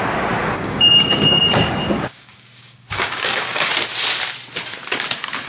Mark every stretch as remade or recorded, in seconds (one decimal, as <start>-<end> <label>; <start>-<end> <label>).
0.0-0.4 recorded; 0.4-3.7 remade; 3.7-5.5 recorded